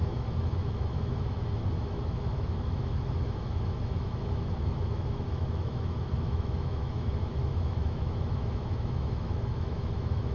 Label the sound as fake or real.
fake